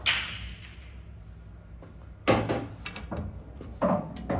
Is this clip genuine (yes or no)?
yes